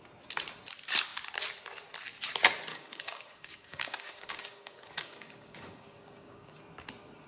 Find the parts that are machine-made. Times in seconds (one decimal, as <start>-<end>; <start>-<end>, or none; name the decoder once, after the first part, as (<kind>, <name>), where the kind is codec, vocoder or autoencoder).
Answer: 2.7-6.6 (codec, DAC)